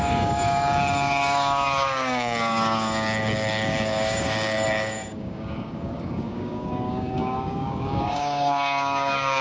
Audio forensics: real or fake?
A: fake